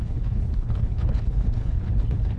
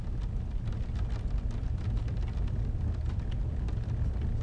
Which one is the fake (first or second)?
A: first